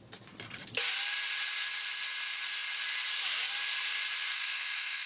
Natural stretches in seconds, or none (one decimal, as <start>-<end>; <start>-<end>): 0.0-4.3

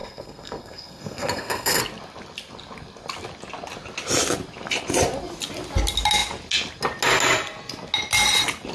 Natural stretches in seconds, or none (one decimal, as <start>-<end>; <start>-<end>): 1.8-8.7